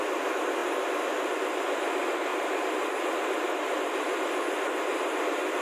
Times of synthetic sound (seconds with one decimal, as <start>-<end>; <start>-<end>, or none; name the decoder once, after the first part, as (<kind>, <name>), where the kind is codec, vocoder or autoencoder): none